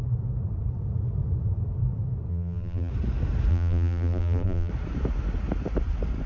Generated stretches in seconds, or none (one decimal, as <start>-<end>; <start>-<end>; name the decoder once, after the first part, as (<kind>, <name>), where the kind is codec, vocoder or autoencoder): 2.3-2.9 (vocoder, BigVGAN v2); 3.5-4.7